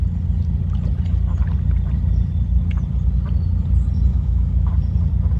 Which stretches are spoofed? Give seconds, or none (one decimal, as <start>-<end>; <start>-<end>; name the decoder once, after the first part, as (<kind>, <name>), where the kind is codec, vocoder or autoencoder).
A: 4.1-4.7 (autoencoder, DAC-VAE)